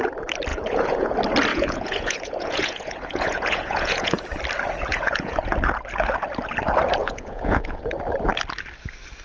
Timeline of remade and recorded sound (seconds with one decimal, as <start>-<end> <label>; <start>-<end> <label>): 0.0-0.5 recorded; 0.5-1.1 remade; 1.1-1.5 recorded; 1.5-4.2 remade; 4.2-4.9 recorded; 4.9-5.4 remade; 5.4-7.0 recorded; 7.0-7.8 remade; 7.8-9.2 recorded